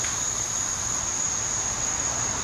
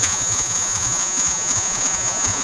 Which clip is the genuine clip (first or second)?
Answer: first